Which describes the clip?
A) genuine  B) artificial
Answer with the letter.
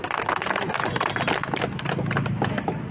A